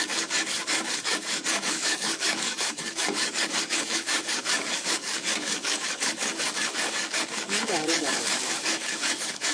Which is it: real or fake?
fake